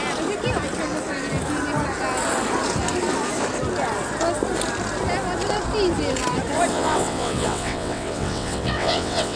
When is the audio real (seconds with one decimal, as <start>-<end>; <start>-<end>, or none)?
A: 0.0-6.7